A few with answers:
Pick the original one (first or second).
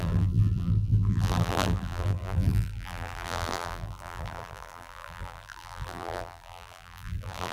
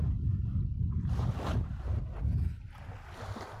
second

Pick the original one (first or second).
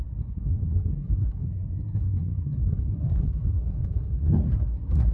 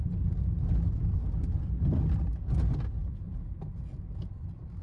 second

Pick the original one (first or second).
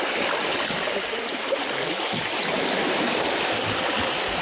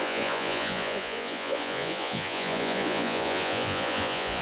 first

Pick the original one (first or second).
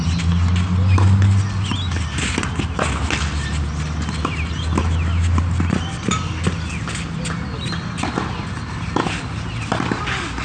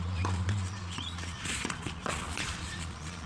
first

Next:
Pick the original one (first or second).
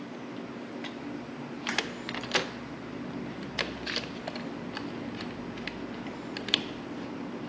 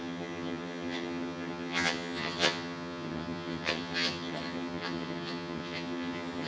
first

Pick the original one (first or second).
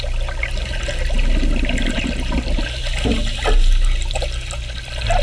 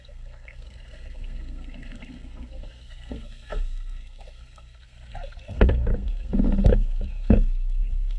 first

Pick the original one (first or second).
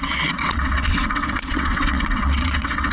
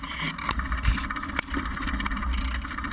second